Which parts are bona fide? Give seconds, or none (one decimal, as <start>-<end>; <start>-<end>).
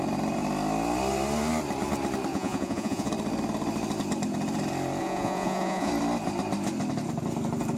0.0-2.3; 3.1-5.0; 5.9-7.8